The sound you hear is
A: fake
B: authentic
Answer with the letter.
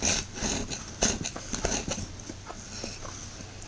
B